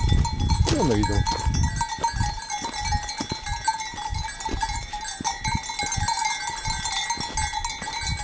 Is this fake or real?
real